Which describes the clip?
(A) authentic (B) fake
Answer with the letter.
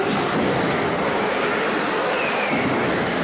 A